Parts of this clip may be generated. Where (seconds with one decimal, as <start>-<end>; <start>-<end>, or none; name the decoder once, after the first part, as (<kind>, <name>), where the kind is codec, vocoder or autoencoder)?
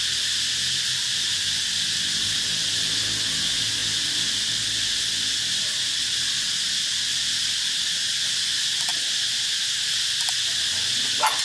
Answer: none